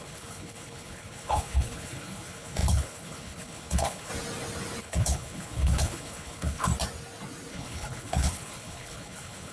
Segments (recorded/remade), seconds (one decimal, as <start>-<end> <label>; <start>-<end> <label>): 0.0-4.1 remade; 4.1-4.8 recorded; 4.8-6.7 remade; 6.7-7.5 recorded; 7.5-9.5 remade